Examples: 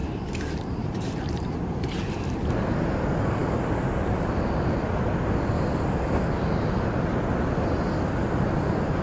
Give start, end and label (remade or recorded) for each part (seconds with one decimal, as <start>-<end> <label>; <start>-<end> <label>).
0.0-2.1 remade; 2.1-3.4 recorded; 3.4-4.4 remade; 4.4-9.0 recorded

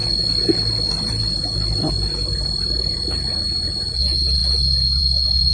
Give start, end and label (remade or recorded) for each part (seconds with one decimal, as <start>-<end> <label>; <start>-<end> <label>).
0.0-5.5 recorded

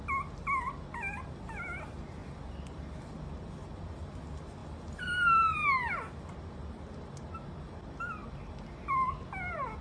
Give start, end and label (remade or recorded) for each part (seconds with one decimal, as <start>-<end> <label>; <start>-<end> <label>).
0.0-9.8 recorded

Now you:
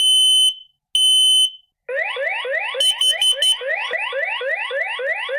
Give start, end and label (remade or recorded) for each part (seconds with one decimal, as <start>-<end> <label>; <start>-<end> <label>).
0.0-5.4 recorded

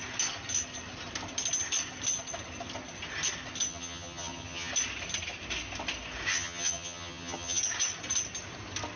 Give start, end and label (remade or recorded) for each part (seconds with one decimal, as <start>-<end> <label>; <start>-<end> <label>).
0.0-3.7 recorded; 3.7-4.7 remade; 4.7-6.3 recorded; 6.3-7.6 remade; 7.6-9.0 recorded

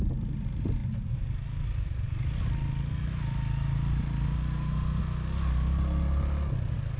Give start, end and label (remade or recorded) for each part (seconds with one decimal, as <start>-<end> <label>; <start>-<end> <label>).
0.0-7.0 recorded

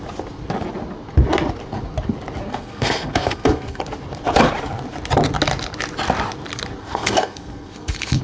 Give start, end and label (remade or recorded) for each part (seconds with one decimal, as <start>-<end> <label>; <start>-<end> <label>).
0.0-2.5 recorded; 2.5-3.8 remade; 3.8-6.8 recorded; 6.8-8.2 remade

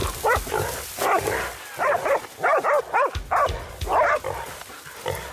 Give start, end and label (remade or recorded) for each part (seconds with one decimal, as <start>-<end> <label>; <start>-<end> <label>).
0.0-5.3 recorded